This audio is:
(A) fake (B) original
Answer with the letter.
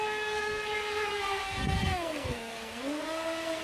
A